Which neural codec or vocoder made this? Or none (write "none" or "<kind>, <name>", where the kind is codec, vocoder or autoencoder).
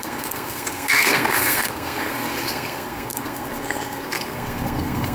codec, SNAC